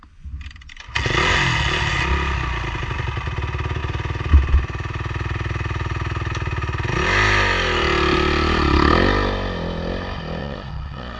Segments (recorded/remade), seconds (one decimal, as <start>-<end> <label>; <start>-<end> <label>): 0.0-10.4 recorded; 10.4-11.2 remade